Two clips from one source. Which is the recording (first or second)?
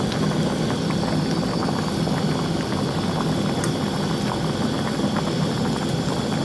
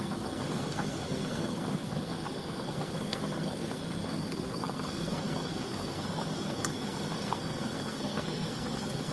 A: first